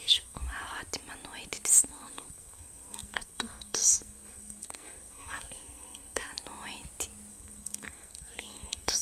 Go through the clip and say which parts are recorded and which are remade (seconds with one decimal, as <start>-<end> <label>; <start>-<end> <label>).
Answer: 0.0-0.4 remade; 0.4-1.8 recorded; 1.8-6.3 remade; 6.3-7.3 recorded; 7.3-9.0 remade